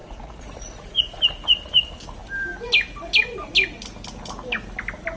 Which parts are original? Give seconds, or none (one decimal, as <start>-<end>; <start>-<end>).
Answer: 1.2-5.2